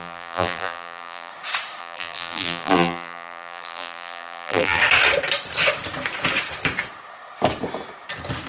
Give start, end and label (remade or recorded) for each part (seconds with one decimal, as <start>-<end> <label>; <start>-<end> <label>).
0.0-1.3 remade; 1.3-1.8 recorded; 1.8-4.8 remade; 4.8-8.5 recorded